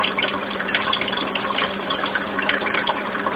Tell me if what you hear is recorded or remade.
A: remade